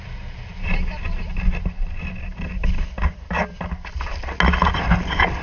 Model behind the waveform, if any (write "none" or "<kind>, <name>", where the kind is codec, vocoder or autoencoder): none